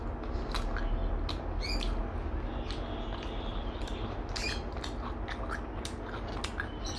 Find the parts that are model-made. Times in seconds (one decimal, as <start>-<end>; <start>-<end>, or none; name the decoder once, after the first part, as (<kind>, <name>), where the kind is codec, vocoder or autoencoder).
none